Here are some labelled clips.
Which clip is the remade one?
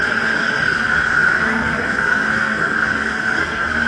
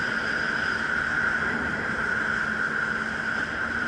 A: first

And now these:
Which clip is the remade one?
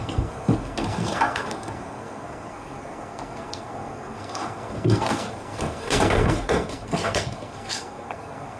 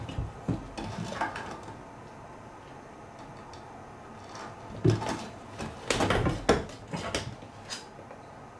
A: first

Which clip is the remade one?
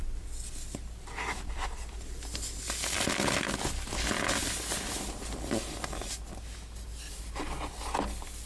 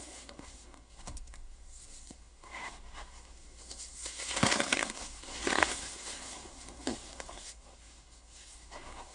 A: second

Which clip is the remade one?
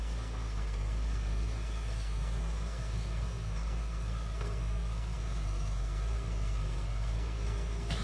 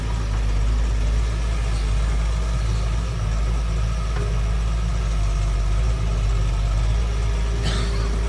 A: first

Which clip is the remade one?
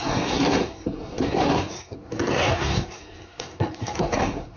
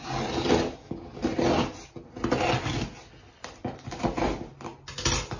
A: first